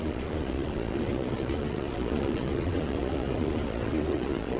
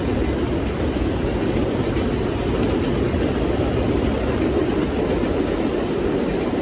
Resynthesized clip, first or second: first